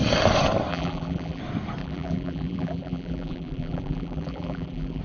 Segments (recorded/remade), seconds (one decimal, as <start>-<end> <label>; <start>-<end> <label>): 0.0-0.7 recorded; 0.7-1.4 remade; 1.4-1.8 recorded; 1.8-5.0 remade